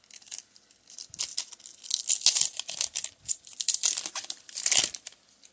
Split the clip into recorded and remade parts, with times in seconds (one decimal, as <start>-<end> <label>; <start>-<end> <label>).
0.0-3.8 recorded; 3.8-5.5 remade